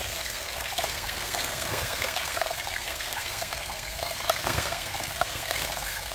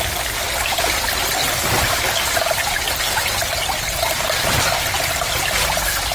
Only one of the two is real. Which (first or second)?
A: second